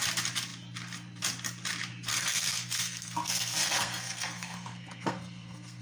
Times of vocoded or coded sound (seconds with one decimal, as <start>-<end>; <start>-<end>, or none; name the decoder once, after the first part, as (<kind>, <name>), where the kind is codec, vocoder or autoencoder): 2.1-5.8 (codec, SNAC)